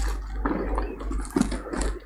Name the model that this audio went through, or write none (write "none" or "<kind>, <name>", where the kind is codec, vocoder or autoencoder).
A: none